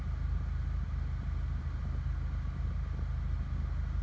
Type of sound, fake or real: real